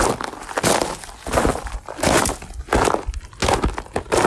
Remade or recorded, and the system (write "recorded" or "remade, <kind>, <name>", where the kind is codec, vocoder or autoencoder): recorded